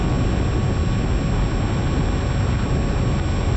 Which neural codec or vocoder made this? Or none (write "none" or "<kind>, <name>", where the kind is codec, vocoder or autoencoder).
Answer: none